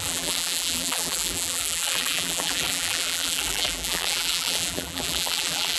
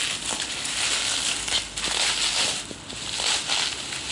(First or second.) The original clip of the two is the second